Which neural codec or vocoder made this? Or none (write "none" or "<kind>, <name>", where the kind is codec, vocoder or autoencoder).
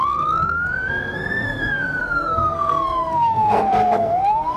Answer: codec, SNAC